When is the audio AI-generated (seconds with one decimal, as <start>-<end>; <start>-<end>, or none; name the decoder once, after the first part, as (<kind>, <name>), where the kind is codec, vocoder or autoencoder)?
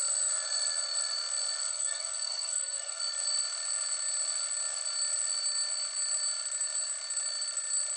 1.7-3.0 (codec, SNAC)